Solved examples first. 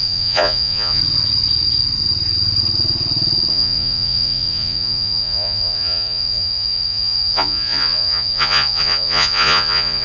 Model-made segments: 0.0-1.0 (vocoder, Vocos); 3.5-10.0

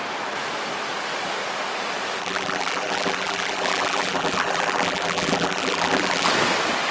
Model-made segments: 2.2-6.3 (vocoder, BigVGAN v2)